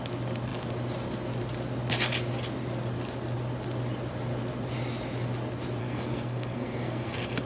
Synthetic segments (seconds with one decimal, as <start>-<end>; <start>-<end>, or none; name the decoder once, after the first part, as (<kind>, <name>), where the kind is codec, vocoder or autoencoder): 5.8-7.5 (codec, SNAC)